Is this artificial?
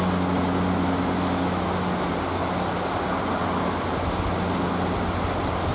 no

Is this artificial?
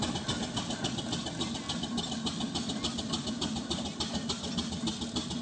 no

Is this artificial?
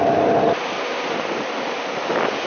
no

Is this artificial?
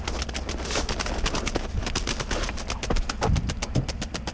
no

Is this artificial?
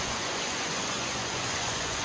yes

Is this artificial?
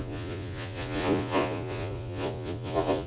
yes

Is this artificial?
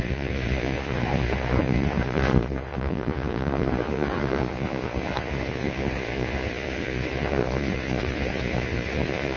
yes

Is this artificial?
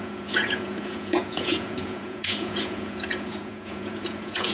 yes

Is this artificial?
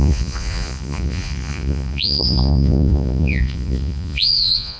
yes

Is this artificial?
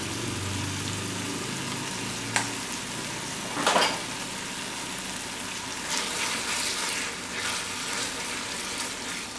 no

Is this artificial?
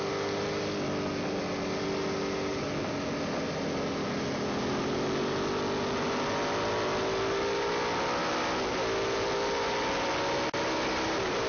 no